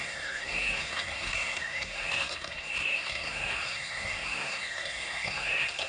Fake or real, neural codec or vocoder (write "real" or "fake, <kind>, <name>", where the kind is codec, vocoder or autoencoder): fake, codec, SNAC